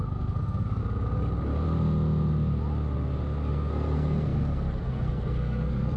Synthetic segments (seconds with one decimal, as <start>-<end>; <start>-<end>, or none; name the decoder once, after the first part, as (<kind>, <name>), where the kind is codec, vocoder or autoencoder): 0.0-0.8 (codec, SNAC); 3.5-6.0